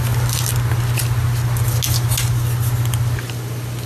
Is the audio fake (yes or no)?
no